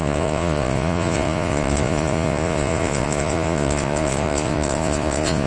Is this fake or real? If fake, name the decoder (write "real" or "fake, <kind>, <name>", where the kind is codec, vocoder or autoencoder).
fake, vocoder, Vocos